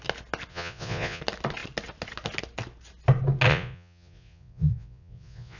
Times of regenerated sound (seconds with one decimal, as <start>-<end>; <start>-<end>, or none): 0.5-1.2; 3.5-5.6